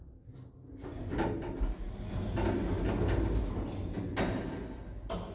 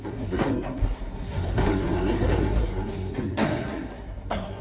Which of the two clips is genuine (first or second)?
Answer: first